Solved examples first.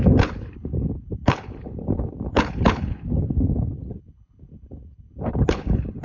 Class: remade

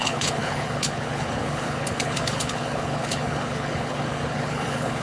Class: remade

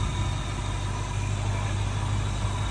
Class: recorded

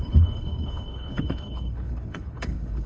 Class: remade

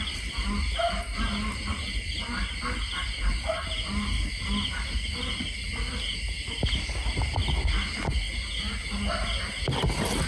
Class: recorded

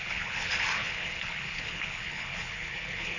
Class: remade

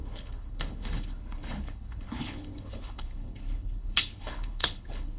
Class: remade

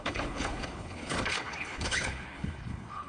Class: remade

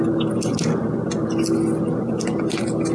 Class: recorded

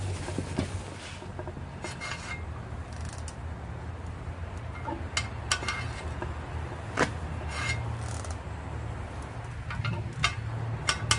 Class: recorded